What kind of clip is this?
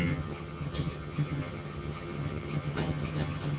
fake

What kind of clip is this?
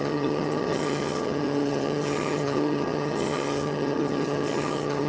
fake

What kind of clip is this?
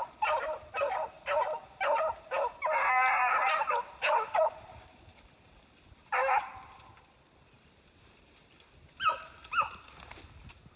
real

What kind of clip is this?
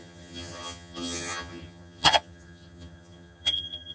fake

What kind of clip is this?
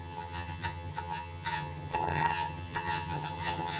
fake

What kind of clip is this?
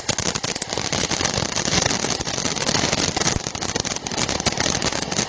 real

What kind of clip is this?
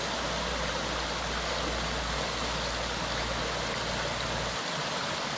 real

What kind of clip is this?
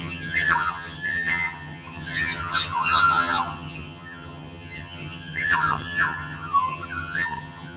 fake